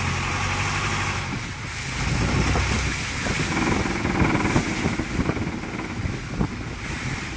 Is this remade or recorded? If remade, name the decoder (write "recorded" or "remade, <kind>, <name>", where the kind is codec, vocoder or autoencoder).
recorded